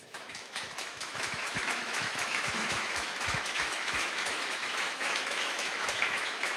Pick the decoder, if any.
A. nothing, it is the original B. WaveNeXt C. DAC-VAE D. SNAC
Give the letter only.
C